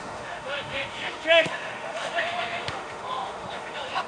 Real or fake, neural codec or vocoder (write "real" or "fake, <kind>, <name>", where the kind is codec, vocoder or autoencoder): fake, autoencoder, DAC-VAE